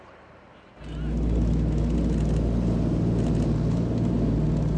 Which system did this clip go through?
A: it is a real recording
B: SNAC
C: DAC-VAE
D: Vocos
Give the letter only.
A